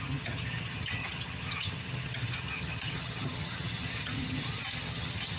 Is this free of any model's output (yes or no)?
no